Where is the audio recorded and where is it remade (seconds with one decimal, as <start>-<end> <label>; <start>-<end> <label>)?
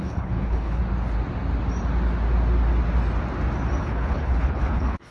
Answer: 0.0-0.8 remade; 0.8-3.8 recorded; 3.8-5.1 remade